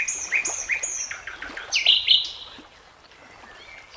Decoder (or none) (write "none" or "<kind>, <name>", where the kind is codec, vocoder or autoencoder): none